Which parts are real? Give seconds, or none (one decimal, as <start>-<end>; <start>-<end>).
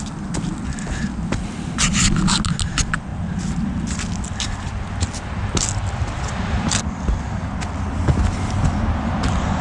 0.0-9.6